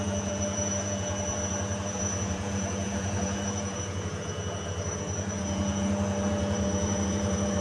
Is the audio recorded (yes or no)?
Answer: no